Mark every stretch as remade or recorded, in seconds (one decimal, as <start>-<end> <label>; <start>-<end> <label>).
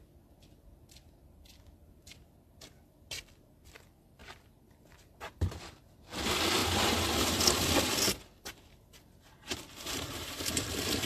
0.0-6.6 remade; 6.6-8.4 recorded; 8.4-11.1 remade